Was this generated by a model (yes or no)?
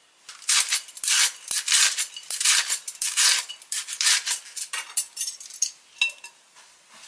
no